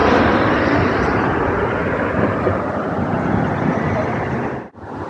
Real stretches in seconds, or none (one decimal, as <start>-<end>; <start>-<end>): 0.6-1.8